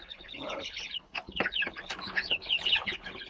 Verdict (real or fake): fake